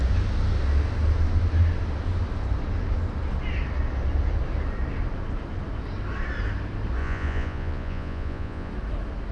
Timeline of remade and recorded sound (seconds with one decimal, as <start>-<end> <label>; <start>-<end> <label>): 0.0-7.0 recorded; 7.0-8.7 remade; 8.7-9.3 recorded